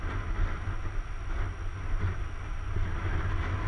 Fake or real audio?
real